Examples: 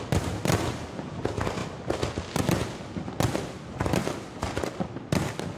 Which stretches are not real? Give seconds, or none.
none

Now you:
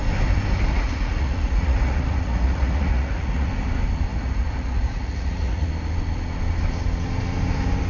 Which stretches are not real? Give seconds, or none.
0.7-3.5 (vocoder, Vocos); 4.1-5.7

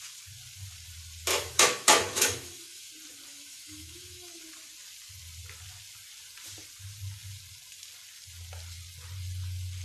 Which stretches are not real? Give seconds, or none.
1.3-2.9 (autoencoder, DAC-VAE); 3.3-4.4

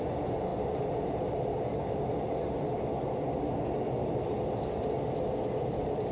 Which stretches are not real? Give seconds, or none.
none

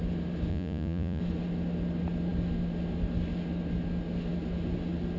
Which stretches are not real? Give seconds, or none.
0.5-1.2 (vocoder, Vocos)

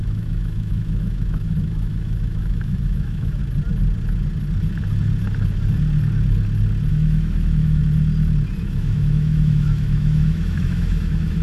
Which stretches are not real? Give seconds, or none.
0.0-3.4 (autoencoder, DAC-VAE); 6.9-7.8; 8.6-11.4